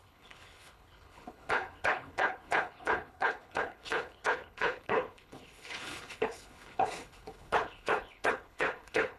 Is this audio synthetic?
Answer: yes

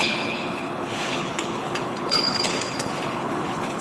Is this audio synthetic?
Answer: yes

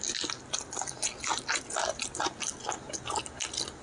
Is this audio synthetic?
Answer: no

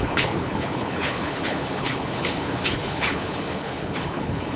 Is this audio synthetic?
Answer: yes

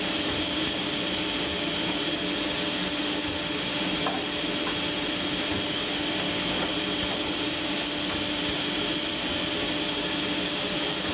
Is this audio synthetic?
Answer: no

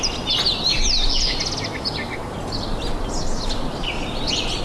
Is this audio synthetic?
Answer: no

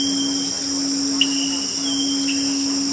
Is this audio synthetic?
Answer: no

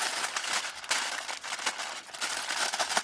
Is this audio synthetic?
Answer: no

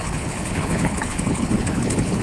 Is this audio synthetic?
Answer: yes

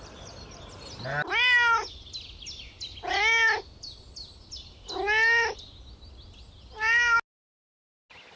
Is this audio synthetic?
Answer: no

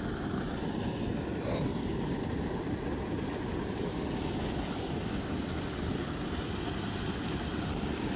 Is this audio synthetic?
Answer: no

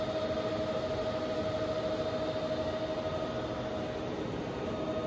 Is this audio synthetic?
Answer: no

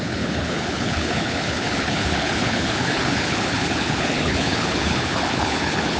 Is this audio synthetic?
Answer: yes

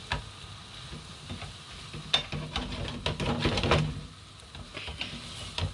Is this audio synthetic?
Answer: no